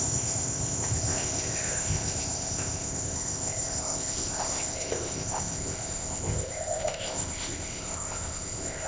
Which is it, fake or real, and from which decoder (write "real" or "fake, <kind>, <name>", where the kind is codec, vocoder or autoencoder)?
fake, codec, ZipCodec